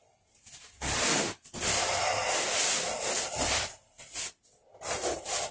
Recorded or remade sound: recorded